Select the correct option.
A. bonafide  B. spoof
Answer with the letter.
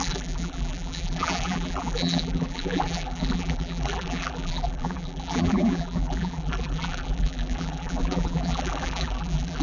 B